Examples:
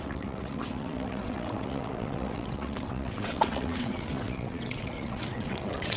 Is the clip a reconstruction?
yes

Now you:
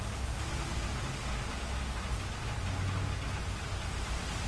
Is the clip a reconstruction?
no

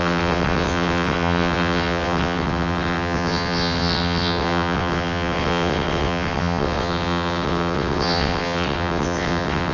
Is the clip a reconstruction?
yes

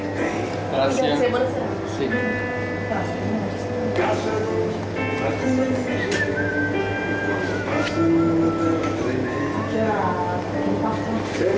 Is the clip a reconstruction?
no